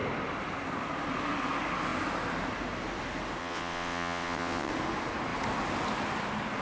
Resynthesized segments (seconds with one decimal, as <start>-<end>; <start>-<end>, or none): 3.4-4.7